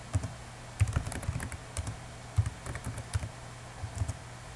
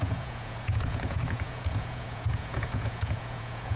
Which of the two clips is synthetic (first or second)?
second